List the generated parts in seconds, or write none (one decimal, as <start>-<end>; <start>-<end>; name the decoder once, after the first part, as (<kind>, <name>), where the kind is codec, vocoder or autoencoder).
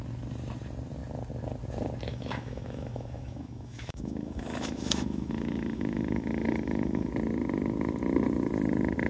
2.1-7.1 (autoencoder, DAC-VAE)